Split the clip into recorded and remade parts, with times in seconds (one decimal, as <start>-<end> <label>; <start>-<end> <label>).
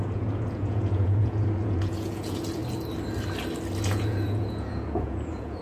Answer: 0.0-2.6 remade; 2.6-3.8 recorded; 3.8-5.6 remade